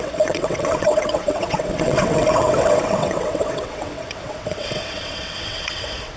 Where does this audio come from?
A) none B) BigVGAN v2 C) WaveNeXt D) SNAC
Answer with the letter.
C